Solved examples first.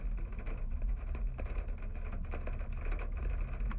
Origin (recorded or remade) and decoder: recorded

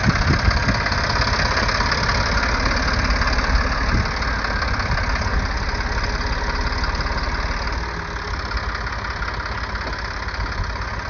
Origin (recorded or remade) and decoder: recorded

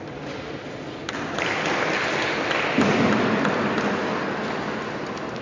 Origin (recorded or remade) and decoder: recorded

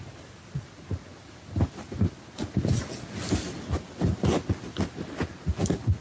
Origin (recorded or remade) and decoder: recorded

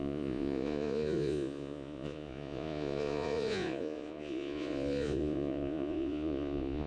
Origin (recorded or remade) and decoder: remade, vocoder, Vocos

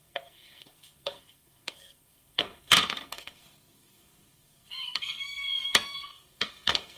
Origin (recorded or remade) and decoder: remade, codec, SNAC